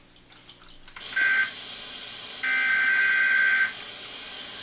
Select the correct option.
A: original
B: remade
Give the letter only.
A